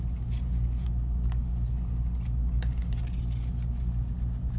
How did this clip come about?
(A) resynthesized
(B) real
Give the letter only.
B